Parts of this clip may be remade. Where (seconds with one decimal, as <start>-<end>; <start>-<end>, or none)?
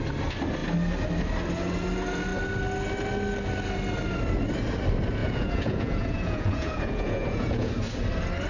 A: 5.2-7.7